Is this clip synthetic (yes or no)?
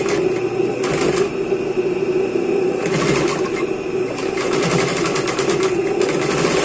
no